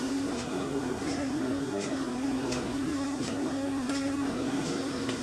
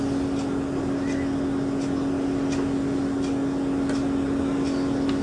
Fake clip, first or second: first